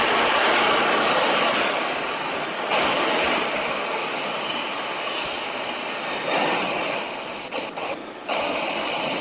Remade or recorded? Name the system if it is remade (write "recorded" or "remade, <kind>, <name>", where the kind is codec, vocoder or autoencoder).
recorded